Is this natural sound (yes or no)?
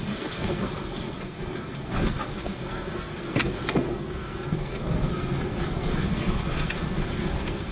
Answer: no